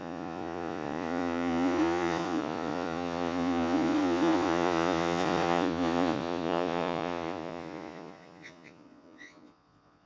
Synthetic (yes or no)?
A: yes